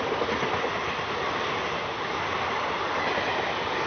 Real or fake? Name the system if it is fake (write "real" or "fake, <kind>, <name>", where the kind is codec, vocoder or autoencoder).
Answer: real